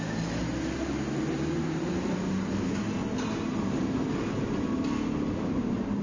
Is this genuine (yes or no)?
yes